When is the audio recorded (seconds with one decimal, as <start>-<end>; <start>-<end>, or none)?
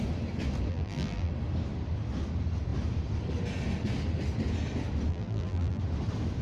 0.0-0.7; 1.3-5.1; 5.8-6.4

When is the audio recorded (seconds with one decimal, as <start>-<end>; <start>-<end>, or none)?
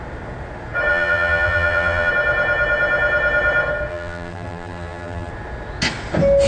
0.0-0.9; 2.1-3.9; 5.3-6.5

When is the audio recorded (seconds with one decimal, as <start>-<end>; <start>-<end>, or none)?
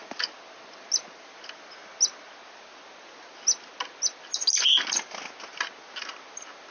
0.0-6.7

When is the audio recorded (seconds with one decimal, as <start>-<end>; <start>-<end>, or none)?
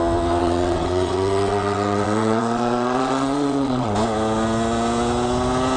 0.0-0.4; 3.9-5.8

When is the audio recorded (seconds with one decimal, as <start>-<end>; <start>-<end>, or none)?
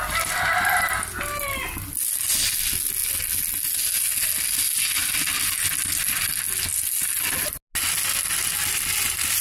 0.0-9.4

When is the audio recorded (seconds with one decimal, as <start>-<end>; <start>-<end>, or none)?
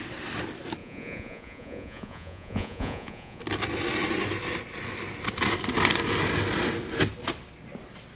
0.0-0.8; 3.4-8.2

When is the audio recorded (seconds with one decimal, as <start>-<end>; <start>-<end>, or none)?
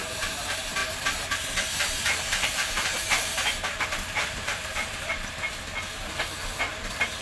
0.8-1.8; 5.7-6.7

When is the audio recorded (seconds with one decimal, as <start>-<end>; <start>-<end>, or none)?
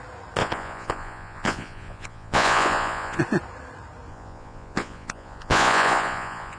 0.0-0.4; 3.2-4.1